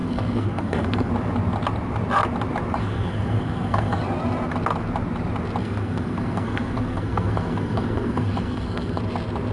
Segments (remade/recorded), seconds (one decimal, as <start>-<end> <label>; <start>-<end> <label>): 0.0-1.1 remade; 1.1-2.8 recorded; 2.8-4.0 remade; 4.0-5.6 recorded; 5.6-9.0 remade; 9.0-9.5 recorded